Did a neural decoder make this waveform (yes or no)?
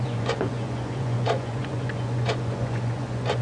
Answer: yes